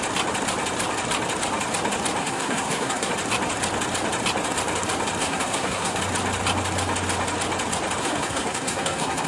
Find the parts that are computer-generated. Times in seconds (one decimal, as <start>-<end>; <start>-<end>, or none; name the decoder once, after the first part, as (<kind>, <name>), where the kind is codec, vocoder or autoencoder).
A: 2.2-3.1 (codec, SNAC); 5.2-6.0; 8.0-9.3